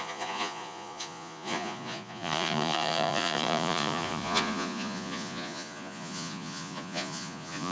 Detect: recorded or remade remade